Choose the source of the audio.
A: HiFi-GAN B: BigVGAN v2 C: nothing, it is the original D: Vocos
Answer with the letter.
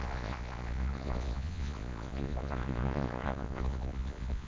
D